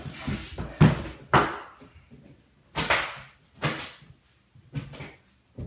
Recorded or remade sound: recorded